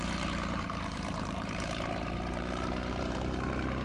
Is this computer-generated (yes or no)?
yes